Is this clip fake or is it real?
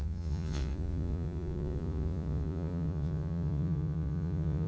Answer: fake